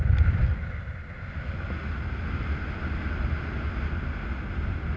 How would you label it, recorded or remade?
recorded